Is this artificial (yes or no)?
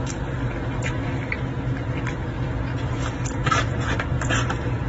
no